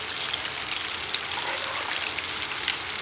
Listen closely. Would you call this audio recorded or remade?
recorded